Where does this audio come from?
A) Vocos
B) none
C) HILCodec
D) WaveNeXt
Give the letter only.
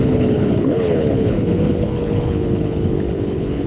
C